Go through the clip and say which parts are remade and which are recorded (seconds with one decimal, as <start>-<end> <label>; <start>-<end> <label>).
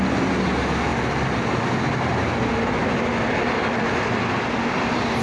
0.0-5.2 recorded